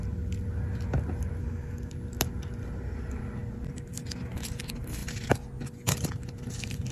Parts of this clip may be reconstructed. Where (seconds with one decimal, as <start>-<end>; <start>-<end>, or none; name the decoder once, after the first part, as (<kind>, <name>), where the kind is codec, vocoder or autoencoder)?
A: 1.4-1.9 (codec, DAC)